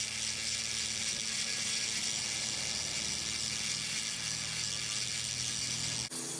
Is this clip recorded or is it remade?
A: recorded